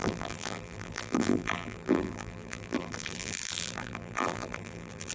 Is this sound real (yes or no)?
no